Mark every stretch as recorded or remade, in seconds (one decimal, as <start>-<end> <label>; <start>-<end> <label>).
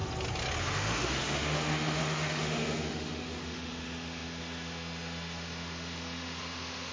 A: 0.0-0.6 recorded; 0.6-6.9 remade